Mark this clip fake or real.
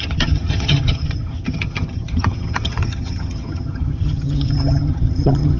fake